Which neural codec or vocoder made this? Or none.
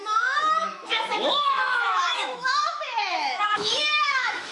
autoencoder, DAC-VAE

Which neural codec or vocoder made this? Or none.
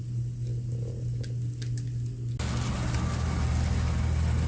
none